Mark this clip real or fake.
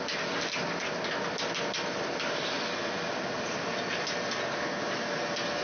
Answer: real